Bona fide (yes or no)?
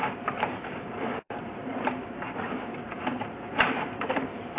no